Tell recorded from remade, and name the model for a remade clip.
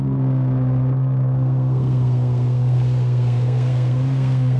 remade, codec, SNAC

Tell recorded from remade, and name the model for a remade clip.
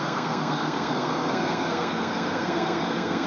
remade, codec, SNAC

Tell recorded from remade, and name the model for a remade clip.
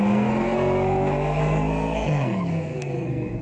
remade, codec, SNAC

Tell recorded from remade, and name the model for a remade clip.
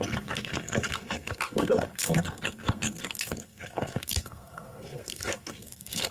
remade, codec, SNAC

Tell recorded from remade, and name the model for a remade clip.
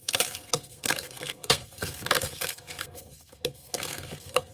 remade, codec, SNAC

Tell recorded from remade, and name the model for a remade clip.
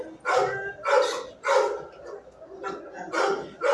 recorded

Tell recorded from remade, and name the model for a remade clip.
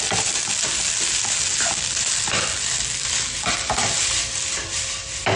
recorded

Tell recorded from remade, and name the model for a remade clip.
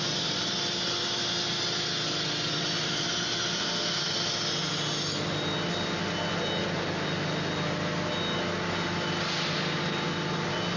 recorded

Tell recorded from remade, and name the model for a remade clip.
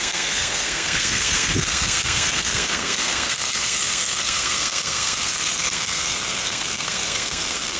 remade, codec, SNAC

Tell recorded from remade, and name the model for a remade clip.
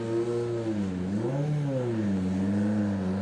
recorded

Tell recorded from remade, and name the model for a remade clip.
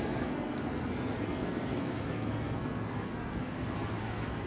remade, codec, SNAC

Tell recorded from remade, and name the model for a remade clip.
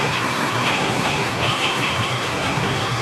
remade, codec, SNAC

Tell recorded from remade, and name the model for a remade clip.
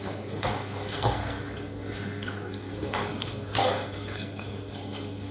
remade, codec, SNAC